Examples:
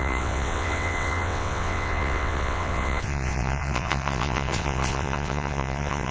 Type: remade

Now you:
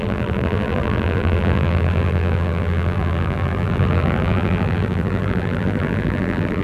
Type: remade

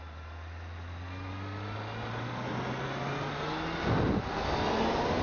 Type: recorded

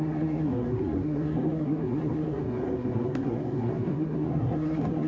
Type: remade